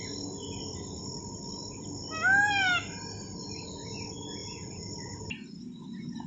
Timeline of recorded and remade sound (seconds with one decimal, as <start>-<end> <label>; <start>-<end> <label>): 0.0-4.4 recorded; 4.4-5.2 remade; 5.2-6.3 recorded